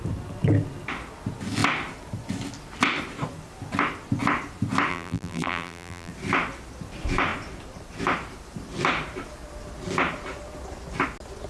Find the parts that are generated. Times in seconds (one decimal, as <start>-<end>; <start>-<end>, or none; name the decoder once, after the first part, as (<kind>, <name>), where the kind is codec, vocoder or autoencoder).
4.9-6.1 (vocoder, BigVGAN v2)